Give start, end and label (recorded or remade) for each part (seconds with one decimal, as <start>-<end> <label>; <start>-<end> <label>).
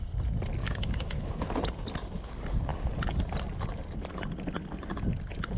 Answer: 0.0-0.6 recorded; 0.6-1.4 remade; 1.4-5.6 recorded